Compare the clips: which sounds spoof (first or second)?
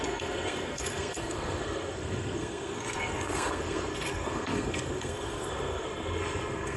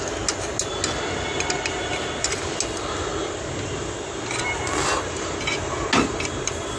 first